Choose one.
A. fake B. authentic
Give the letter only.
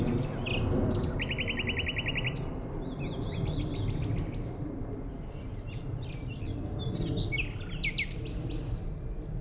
B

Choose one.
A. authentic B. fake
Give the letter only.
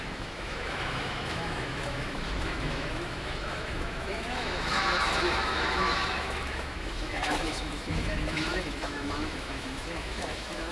B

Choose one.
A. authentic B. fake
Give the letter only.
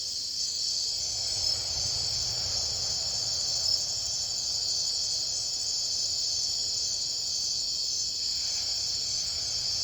A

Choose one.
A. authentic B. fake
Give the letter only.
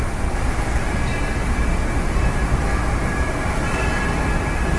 A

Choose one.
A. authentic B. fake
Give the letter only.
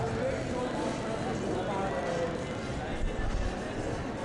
A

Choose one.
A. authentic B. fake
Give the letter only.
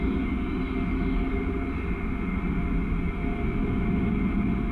A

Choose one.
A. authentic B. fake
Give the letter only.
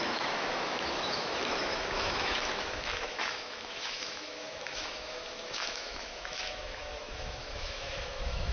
B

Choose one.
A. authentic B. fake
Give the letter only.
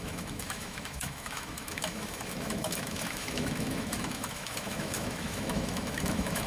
B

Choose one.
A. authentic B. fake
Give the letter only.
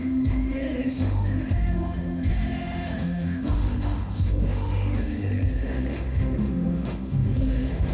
B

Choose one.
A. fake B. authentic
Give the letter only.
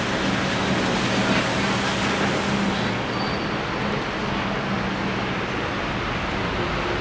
B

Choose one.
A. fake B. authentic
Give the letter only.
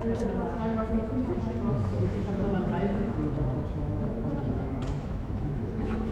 A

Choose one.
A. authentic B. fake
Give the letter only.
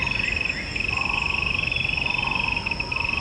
A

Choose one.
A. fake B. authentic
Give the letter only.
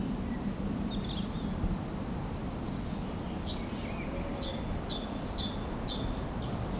B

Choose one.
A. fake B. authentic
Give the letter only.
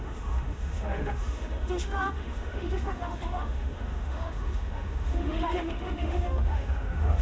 A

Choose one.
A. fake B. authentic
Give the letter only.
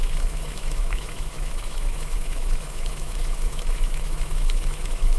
A